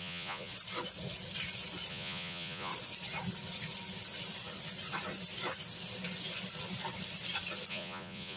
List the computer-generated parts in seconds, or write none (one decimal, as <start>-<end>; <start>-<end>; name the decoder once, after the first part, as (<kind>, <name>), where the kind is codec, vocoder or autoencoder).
0.0-0.5 (vocoder, Vocos); 1.9-2.7; 7.7-8.4